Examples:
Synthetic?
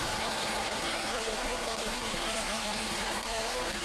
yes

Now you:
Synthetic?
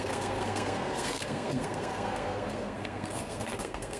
yes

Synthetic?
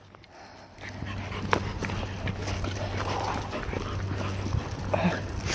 no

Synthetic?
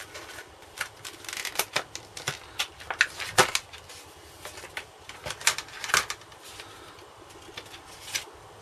no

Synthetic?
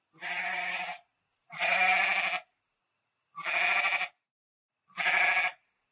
no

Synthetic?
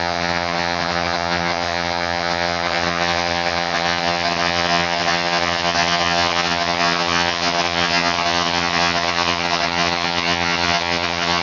yes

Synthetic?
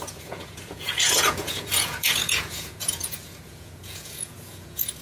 yes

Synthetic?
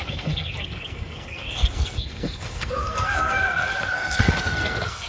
yes